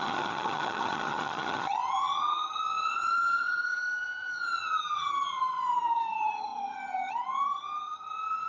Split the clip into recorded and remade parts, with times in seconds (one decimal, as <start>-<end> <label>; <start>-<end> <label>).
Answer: 0.0-8.5 remade